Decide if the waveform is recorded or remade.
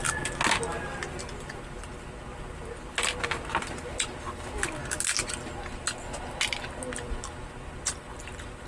recorded